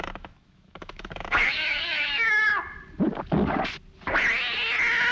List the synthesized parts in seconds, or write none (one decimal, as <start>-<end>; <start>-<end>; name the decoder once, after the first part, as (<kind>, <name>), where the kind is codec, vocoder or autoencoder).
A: 0.0-2.5 (autoencoder, DAC-VAE)